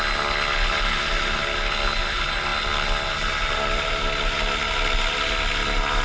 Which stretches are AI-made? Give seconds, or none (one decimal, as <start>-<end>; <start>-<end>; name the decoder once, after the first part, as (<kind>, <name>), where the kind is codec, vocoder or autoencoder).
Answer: none